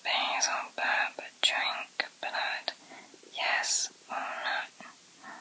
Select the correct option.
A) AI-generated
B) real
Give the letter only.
B